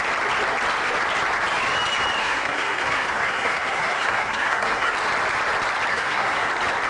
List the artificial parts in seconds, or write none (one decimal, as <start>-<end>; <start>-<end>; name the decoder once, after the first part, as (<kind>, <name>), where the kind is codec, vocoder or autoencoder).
2.2-4.9 (codec, SNAC); 5.9-6.5